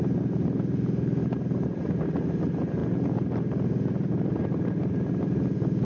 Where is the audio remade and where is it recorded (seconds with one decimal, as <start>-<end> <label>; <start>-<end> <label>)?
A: 0.0-5.8 recorded